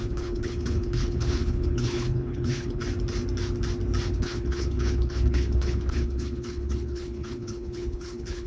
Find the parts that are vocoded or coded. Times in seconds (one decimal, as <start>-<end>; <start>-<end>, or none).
0.0-2.8; 4.1-8.5